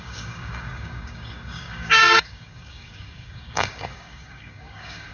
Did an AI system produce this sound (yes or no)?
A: yes